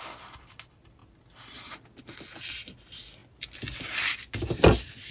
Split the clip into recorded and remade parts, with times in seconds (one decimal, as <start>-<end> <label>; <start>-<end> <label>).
0.0-5.1 recorded